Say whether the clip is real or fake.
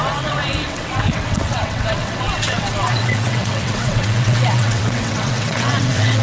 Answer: fake